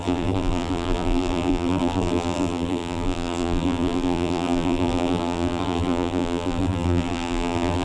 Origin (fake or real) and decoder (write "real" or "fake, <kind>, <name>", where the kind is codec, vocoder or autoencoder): fake, vocoder, BigVGAN v2